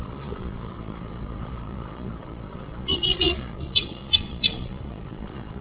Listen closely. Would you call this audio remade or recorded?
remade